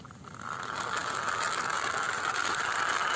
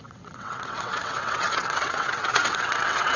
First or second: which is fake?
second